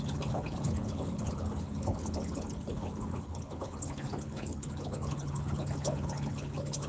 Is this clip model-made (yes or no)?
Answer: yes